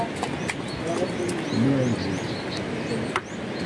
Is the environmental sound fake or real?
real